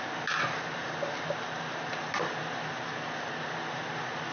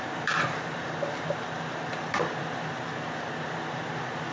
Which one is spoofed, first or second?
second